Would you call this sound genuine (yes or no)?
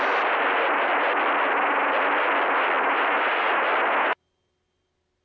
yes